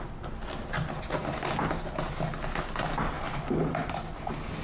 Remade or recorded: recorded